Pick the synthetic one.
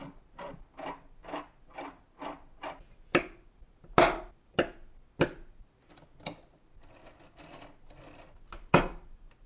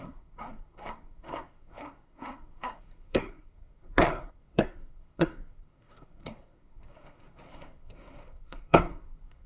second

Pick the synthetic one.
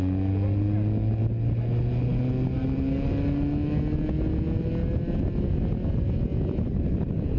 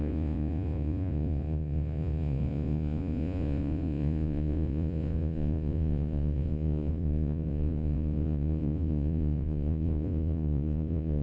second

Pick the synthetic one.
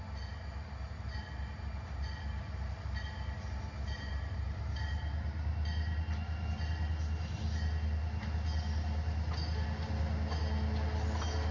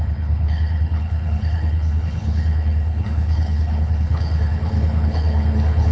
second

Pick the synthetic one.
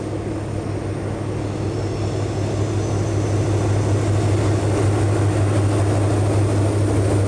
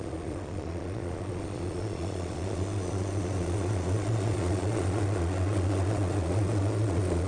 second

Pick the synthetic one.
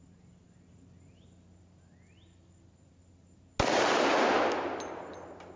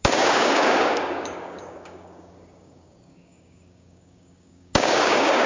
second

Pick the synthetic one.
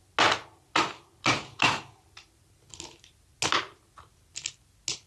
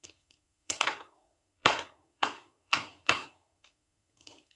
second